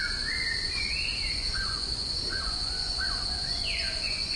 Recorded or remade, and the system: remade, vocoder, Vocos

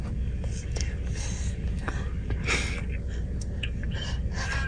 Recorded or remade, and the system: remade, codec, DAC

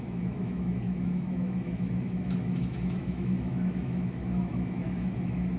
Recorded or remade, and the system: remade, autoencoder, DAC-VAE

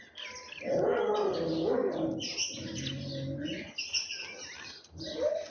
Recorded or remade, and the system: recorded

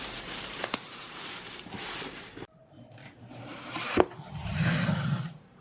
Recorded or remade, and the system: remade, vocoder, BigVGAN v2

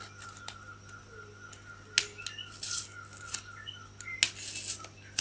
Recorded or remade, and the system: recorded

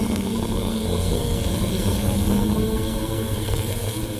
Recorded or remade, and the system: remade, codec, SNAC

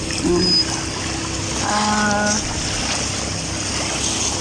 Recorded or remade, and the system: recorded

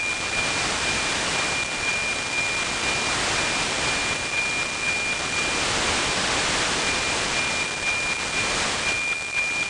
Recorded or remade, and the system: recorded